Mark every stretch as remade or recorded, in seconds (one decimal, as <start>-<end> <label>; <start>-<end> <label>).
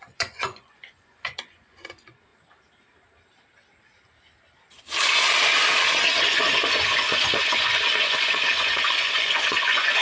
0.0-2.3 remade; 2.3-6.2 recorded; 6.2-10.0 remade